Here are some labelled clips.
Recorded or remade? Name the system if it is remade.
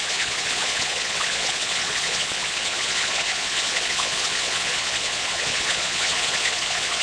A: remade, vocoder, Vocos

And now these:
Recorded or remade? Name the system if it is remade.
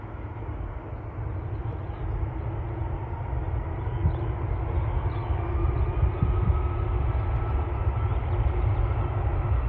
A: recorded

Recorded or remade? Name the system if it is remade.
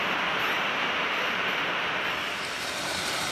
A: remade, vocoder, BigVGAN v2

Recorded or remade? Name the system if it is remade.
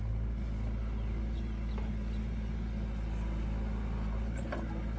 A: recorded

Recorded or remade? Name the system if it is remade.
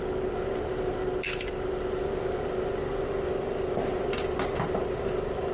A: recorded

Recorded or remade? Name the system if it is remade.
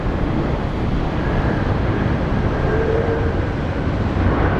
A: remade, vocoder, BigVGAN v2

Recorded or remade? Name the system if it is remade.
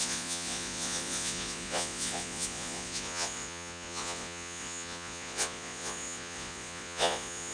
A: remade, vocoder, Vocos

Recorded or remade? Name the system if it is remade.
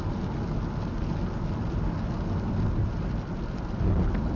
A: recorded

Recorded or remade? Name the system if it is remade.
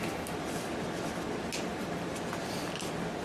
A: recorded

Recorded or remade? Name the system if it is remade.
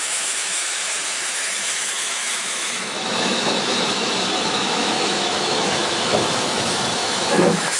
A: remade, autoencoder, DAC-VAE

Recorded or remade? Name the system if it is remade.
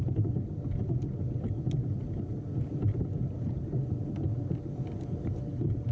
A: recorded